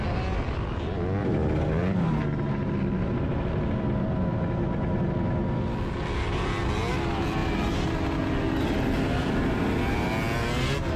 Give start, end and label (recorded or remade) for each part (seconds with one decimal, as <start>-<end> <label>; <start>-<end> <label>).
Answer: 0.0-11.0 recorded